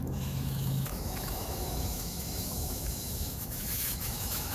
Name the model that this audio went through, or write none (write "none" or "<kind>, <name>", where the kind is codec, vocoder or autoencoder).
autoencoder, DAC-VAE